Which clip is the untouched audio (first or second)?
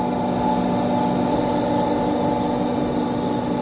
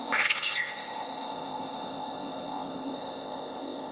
first